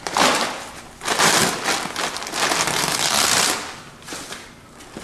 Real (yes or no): yes